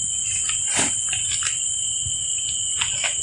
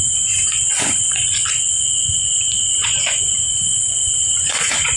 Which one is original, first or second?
first